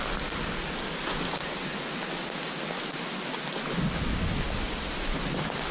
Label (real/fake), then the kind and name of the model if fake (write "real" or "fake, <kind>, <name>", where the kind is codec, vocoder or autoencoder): real